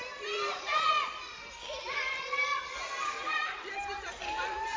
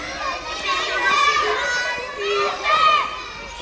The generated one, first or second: first